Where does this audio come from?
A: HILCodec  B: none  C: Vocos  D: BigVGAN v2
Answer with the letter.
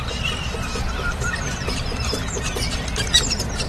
D